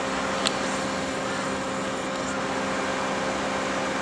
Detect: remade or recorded recorded